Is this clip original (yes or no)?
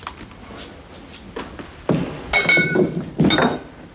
yes